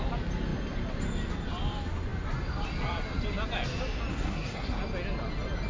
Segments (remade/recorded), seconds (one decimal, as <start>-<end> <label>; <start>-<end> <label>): 0.0-4.1 recorded; 4.1-4.8 remade; 4.8-5.7 recorded